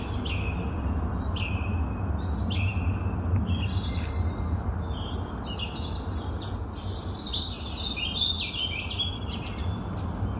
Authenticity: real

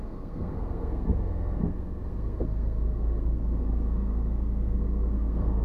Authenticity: fake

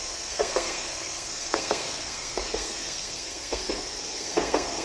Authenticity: fake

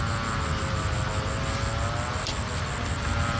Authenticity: real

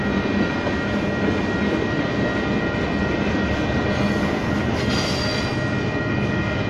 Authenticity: real